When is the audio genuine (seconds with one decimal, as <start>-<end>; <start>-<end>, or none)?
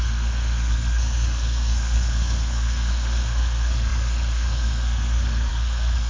none